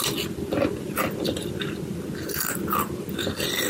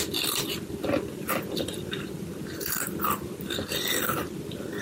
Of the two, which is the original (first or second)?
first